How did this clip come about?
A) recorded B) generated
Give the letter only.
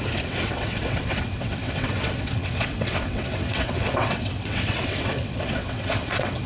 B